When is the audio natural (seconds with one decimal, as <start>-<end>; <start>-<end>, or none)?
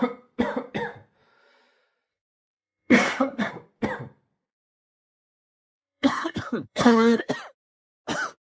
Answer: 0.0-2.1; 3.5-5.3; 7.2-8.6